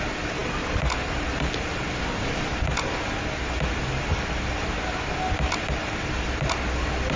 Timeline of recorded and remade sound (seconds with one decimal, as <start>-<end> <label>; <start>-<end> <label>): 0.0-7.2 recorded